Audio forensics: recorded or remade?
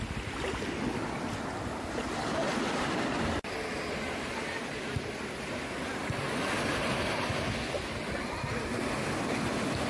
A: recorded